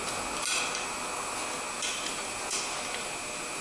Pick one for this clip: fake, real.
real